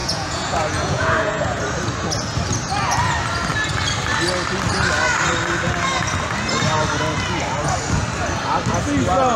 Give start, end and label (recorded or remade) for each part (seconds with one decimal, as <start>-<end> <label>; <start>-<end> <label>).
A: 0.0-1.6 remade; 1.6-9.4 recorded